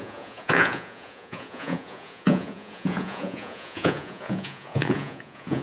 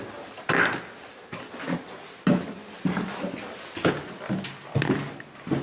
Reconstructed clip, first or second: first